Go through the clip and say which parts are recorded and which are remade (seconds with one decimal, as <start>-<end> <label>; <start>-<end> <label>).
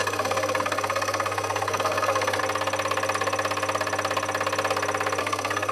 0.0-2.4 remade; 2.4-5.2 recorded; 5.2-5.7 remade